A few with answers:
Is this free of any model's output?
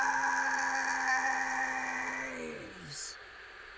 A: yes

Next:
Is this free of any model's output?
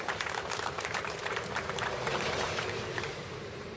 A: no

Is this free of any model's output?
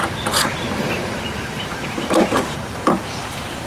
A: no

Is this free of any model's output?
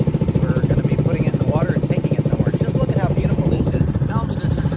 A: no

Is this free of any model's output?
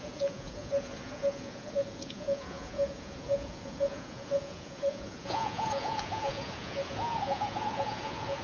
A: no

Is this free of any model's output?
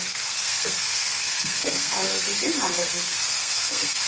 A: no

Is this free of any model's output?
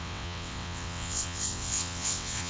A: no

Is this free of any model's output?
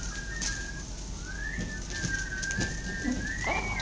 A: yes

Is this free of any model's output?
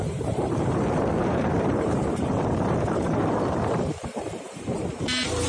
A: no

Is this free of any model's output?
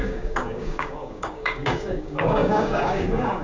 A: no